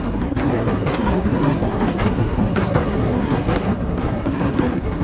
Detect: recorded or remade remade